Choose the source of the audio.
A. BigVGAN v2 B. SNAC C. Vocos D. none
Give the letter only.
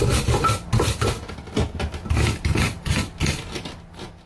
D